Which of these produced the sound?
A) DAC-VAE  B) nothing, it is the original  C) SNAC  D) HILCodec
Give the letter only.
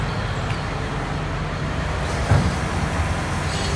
B